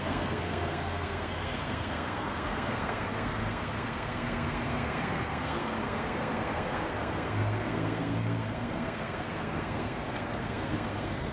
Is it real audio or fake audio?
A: fake